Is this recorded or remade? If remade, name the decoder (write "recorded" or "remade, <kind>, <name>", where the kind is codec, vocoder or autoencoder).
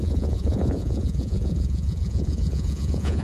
remade, vocoder, Vocos